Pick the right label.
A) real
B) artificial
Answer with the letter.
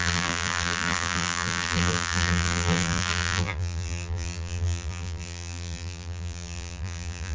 B